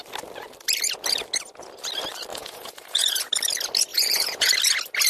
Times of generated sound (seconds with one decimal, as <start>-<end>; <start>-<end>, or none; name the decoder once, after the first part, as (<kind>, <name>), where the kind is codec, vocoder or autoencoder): 2.3-3.3 (vocoder, Vocos); 3.9-4.5